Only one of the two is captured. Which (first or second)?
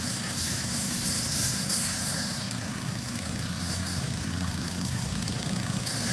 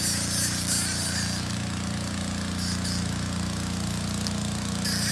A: second